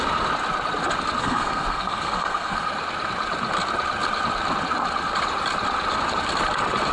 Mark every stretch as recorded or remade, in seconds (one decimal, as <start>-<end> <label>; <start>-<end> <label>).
0.0-1.2 recorded; 1.2-2.7 remade; 2.7-6.9 recorded